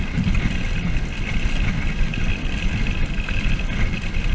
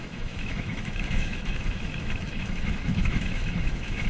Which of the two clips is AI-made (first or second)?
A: second